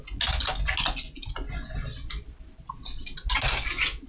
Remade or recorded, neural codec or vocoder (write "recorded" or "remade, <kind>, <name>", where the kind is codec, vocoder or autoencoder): recorded